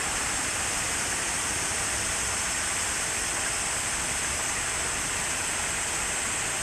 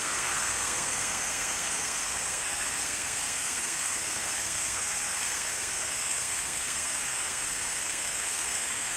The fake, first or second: second